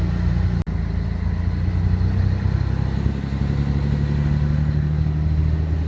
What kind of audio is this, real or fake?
real